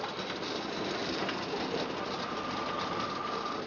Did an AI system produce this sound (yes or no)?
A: no